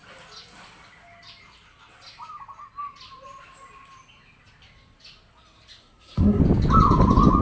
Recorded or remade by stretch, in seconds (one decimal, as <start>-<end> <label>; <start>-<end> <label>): 0.0-5.8 recorded; 5.8-6.4 remade; 6.4-7.4 recorded